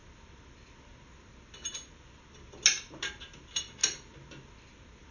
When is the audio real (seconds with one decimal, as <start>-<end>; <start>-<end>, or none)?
0.0-5.1